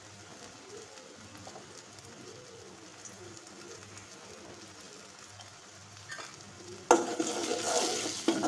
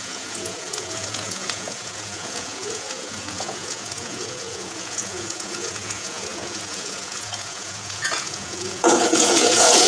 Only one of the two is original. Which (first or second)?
first